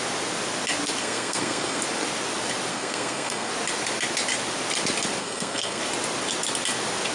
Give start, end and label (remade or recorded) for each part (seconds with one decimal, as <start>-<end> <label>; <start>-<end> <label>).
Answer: 0.0-1.0 recorded; 1.0-1.8 remade; 1.8-2.7 recorded; 2.7-3.5 remade; 3.5-5.2 recorded; 5.2-5.8 remade; 5.8-7.1 recorded